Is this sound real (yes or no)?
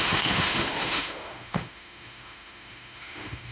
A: no